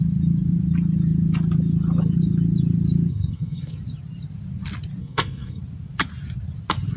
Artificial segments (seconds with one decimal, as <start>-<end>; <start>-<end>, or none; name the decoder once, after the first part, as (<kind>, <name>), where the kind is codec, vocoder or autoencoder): 3.1-3.8 (codec, SNAC); 5.0-5.6